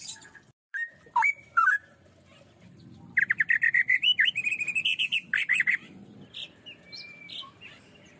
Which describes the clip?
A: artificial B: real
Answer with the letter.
A